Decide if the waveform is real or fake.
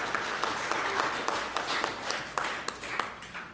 real